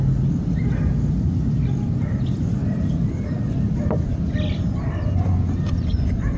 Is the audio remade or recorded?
recorded